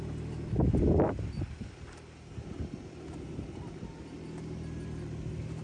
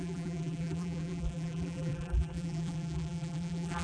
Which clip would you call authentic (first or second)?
first